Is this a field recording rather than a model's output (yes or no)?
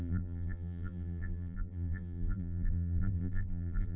no